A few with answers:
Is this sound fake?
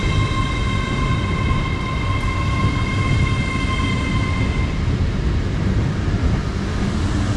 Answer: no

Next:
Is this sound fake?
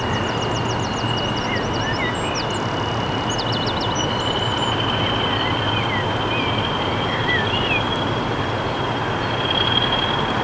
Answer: no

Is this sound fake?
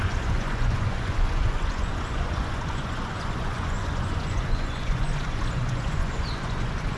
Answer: yes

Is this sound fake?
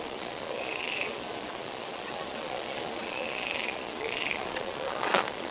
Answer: yes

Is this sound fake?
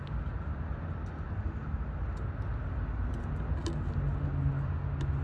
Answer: no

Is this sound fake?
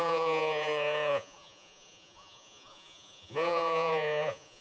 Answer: yes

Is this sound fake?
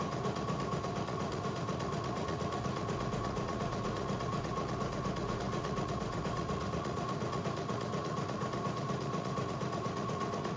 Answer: yes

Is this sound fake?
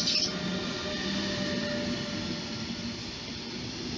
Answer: no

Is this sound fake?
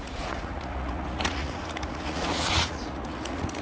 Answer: yes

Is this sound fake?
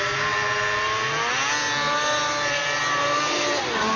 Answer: no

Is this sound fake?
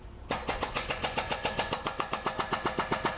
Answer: yes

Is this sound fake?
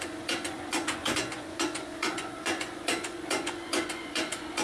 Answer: yes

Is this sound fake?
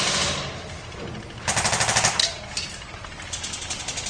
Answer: no